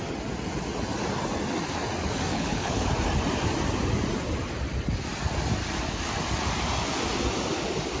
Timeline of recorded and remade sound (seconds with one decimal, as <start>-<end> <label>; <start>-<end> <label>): 0.0-2.3 recorded; 2.3-2.9 remade; 2.9-8.0 recorded